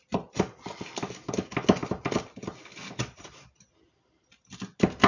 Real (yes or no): yes